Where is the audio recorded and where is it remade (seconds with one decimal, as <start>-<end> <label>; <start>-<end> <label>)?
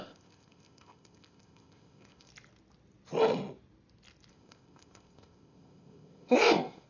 0.0-2.3 remade; 2.3-4.3 recorded; 4.3-6.9 remade